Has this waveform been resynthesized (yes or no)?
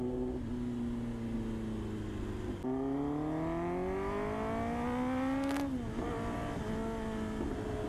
no